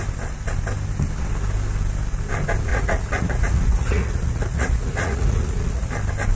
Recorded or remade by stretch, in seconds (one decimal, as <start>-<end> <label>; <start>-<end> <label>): 0.0-2.7 recorded; 2.7-5.9 remade; 5.9-6.4 recorded